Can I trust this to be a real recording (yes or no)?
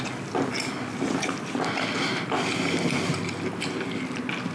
yes